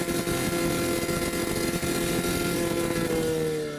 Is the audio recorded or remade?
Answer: recorded